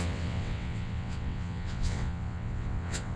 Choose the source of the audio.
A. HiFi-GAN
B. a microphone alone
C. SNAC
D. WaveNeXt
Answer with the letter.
D